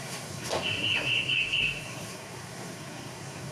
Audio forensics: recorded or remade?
remade